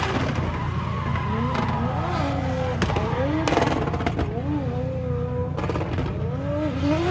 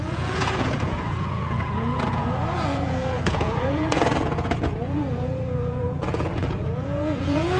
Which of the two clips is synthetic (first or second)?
second